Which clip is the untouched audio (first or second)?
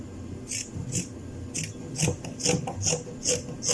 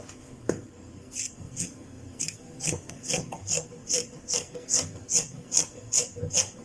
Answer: first